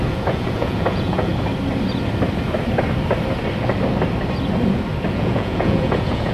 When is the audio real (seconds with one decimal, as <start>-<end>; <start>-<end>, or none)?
1.3-5.1